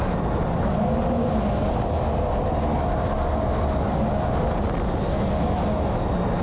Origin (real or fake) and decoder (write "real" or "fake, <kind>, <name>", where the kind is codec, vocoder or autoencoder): real